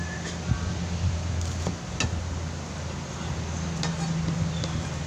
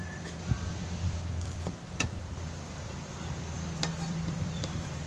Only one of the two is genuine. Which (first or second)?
first